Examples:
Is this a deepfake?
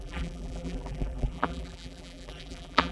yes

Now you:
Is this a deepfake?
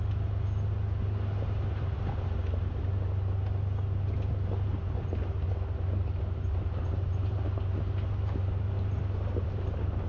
no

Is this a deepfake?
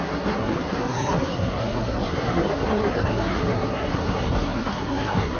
yes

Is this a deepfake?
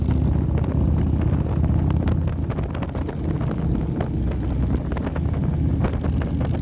no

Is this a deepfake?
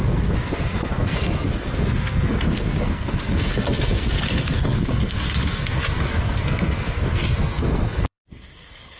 yes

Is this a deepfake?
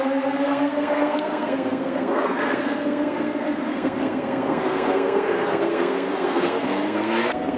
yes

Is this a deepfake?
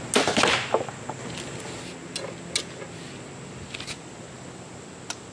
no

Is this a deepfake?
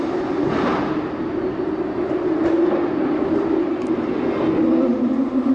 no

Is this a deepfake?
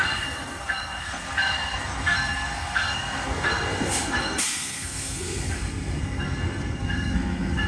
yes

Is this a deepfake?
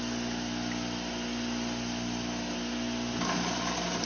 no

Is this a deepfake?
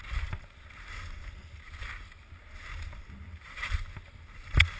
no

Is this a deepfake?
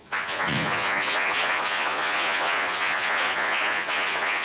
yes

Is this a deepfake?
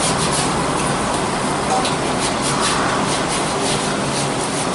no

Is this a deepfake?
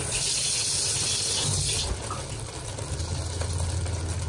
no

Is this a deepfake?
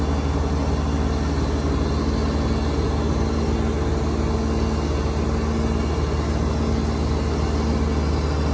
no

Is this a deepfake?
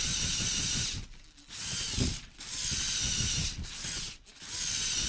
no